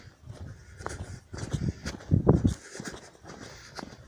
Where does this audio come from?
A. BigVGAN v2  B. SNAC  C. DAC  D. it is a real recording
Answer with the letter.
D